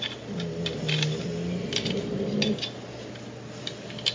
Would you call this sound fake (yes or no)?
no